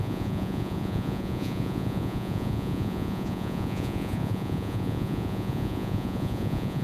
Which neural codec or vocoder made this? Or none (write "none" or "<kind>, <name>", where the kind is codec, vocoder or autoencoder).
vocoder, Vocos